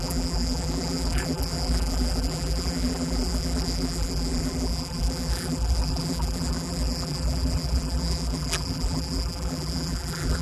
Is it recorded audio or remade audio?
remade